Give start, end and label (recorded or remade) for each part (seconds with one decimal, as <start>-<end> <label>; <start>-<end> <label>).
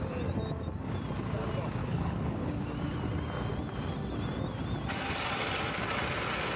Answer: 0.0-1.8 recorded; 1.8-2.5 remade; 2.5-6.6 recorded